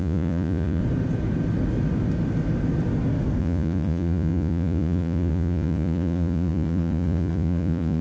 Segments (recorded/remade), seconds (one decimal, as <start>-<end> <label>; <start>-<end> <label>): 0.0-0.8 remade; 0.8-3.4 recorded; 3.4-8.0 remade

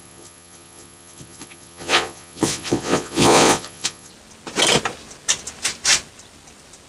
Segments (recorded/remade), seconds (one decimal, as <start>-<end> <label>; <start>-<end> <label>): 0.0-4.1 remade; 4.1-6.9 recorded

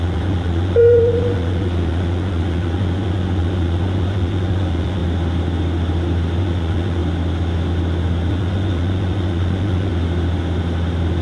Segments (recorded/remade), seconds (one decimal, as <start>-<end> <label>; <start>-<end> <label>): 0.0-5.0 remade; 5.0-6.4 recorded; 6.4-7.0 remade; 7.0-8.3 recorded; 8.3-9.9 remade; 9.9-11.2 recorded

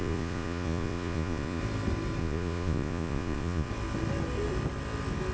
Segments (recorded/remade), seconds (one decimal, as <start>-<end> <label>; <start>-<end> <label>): 0.0-1.6 remade; 1.6-2.2 recorded; 2.2-3.7 remade; 3.7-5.3 recorded

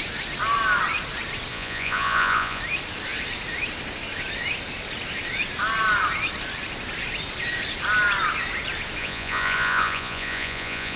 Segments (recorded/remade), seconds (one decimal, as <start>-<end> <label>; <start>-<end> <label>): 0.0-1.5 recorded; 1.5-2.6 remade; 2.6-9.0 recorded; 9.0-11.0 remade

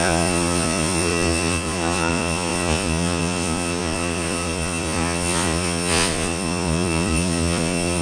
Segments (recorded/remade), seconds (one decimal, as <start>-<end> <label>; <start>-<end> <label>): 0.0-8.0 remade